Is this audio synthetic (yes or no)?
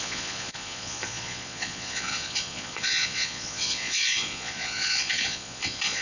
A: yes